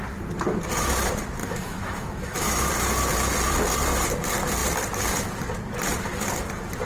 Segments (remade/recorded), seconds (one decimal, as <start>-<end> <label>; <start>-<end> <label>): 0.0-1.4 recorded; 1.4-2.7 remade; 2.7-6.8 recorded

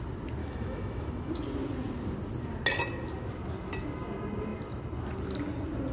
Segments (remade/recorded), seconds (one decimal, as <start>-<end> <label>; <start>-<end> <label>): 0.0-0.4 recorded; 0.4-1.3 remade; 1.3-5.9 recorded

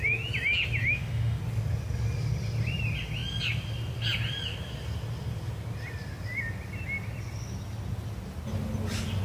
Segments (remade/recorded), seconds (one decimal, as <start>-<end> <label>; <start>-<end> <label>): 0.0-0.8 recorded; 0.8-1.4 remade; 1.4-9.2 recorded

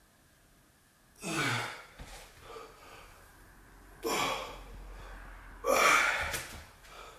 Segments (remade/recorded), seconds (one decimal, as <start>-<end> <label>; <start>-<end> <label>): 0.0-7.2 recorded

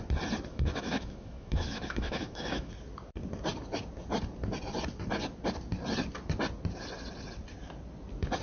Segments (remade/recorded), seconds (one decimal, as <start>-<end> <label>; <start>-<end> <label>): 0.0-0.5 recorded; 0.5-2.7 remade; 2.7-8.4 recorded

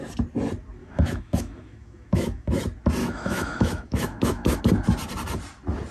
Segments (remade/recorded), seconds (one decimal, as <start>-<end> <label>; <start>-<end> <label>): 0.0-0.8 recorded; 0.8-2.6 remade; 2.6-3.0 recorded; 3.0-4.6 remade; 4.6-5.9 recorded